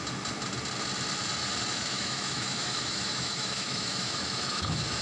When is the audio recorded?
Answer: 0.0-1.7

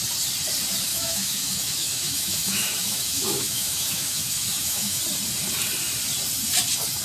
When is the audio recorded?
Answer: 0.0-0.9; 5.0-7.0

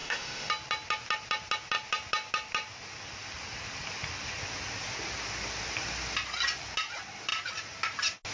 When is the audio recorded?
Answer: 0.5-8.3